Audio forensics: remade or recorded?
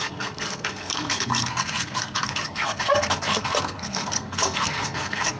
remade